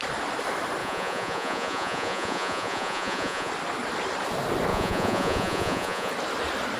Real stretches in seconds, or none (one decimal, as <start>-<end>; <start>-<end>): 0.0-0.8; 3.5-4.7; 6.1-6.8